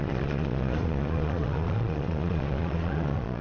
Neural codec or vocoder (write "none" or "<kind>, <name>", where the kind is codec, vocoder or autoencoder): vocoder, Vocos